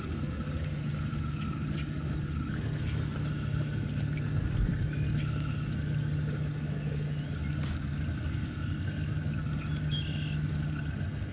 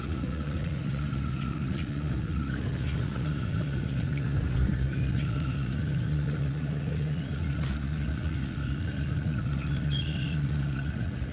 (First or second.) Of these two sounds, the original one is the first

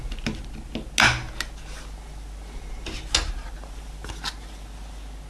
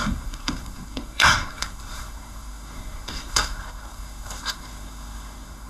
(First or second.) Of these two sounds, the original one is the first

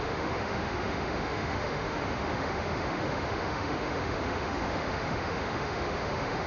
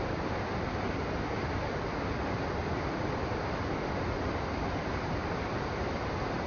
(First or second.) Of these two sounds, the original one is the second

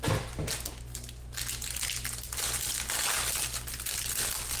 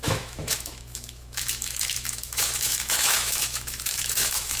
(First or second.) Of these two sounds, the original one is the first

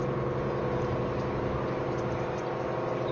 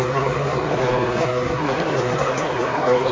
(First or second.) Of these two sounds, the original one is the first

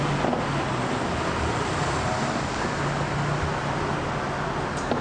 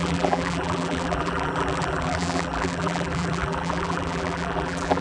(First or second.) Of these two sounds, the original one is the first